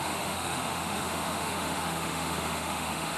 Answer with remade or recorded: remade